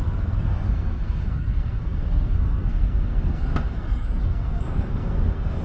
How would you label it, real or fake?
fake